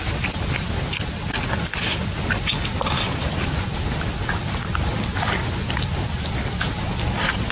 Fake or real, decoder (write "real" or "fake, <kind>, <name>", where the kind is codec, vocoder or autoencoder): real